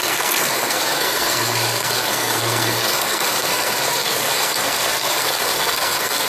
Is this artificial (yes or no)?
yes